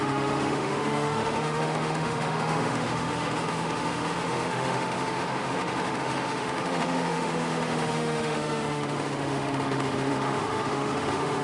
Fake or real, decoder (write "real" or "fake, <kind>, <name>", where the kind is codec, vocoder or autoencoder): fake, autoencoder, DAC-VAE